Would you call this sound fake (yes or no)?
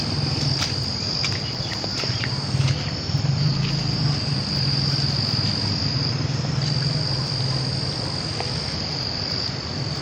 no